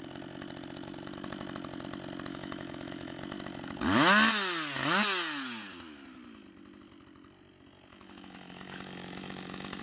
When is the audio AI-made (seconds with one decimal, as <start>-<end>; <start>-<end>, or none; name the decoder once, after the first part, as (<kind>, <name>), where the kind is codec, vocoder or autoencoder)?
2.3-3.2 (autoencoder, DAC-VAE); 7.9-9.8